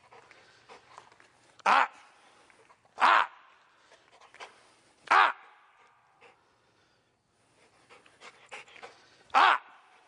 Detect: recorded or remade recorded